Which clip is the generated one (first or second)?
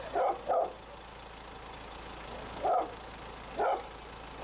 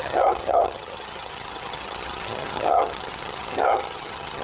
second